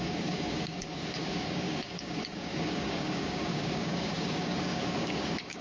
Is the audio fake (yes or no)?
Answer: yes